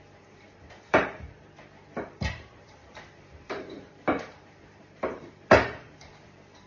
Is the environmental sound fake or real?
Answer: fake